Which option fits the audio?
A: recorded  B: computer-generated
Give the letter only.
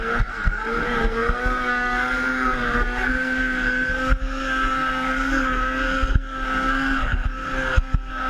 B